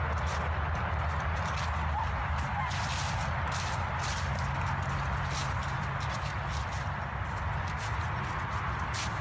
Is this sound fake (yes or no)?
no